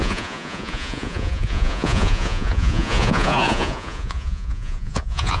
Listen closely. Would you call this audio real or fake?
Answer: fake